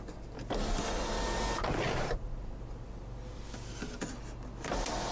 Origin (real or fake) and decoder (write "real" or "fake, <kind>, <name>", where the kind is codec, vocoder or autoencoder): real